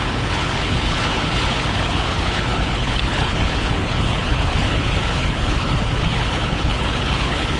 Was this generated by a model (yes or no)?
yes